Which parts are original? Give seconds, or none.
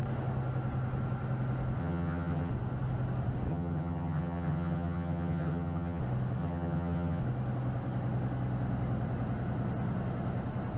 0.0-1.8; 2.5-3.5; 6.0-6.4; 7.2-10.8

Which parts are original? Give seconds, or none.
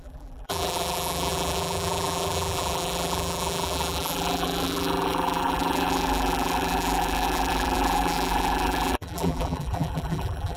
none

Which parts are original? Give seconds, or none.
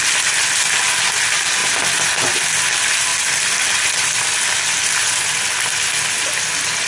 0.0-1.6; 2.1-3.1; 4.0-6.9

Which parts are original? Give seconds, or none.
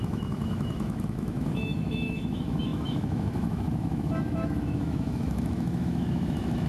none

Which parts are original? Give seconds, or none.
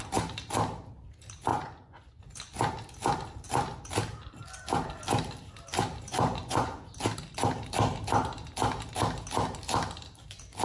0.0-1.5; 2.2-6.1; 6.9-10.6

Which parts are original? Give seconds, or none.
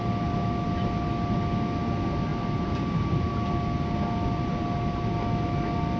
0.0-6.0